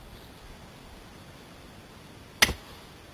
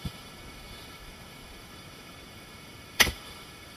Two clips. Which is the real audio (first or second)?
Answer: first